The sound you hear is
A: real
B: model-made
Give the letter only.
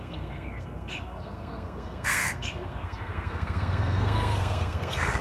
B